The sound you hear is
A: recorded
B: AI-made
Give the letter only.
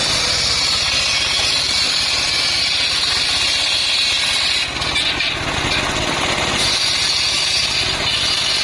A